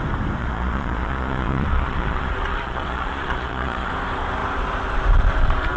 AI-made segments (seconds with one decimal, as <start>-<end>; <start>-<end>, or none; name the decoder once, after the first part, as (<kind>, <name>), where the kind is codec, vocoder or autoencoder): 0.4-3.9 (vocoder, Vocos)